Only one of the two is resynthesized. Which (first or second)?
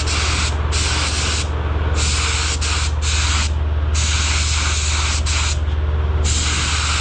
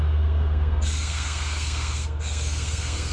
second